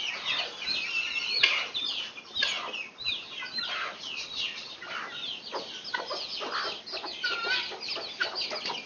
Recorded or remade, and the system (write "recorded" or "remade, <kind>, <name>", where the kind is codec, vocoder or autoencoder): recorded